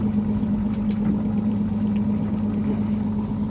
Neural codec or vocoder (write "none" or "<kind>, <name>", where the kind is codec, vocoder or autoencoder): none